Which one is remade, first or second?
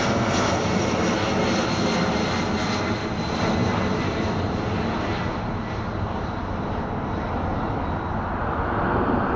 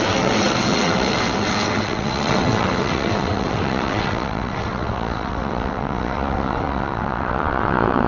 second